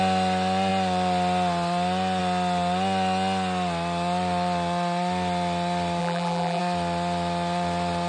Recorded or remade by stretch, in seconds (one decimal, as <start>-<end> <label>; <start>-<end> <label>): 0.0-6.0 recorded; 6.0-6.6 remade; 6.6-8.1 recorded